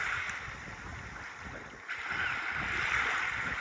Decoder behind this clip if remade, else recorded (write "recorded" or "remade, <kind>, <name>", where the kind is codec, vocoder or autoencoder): recorded